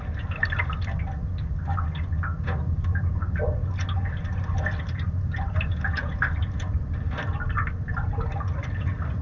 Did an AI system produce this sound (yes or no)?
no